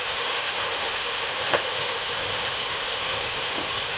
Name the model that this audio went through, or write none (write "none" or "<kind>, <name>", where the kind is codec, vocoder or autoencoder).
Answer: autoencoder, DAC-VAE